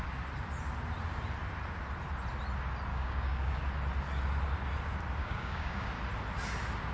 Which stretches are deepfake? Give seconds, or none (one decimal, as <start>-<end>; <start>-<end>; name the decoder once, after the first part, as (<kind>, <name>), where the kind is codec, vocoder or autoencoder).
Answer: 2.9-3.6 (codec, DAC); 5.2-5.9